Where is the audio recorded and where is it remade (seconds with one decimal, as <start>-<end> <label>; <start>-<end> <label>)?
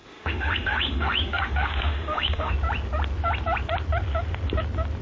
0.0-2.5 remade; 2.5-5.0 recorded